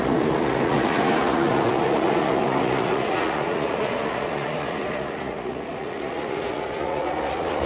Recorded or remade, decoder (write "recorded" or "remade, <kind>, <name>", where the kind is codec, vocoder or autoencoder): remade, vocoder, Vocos